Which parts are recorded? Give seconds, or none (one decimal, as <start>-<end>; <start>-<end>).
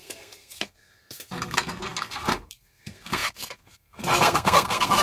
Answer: none